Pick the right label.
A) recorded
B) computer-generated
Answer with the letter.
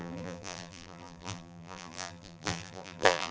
B